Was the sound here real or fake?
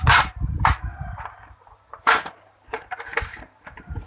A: fake